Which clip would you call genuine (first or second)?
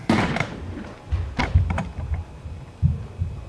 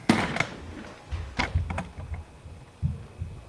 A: second